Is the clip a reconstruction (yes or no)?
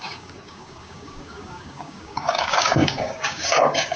yes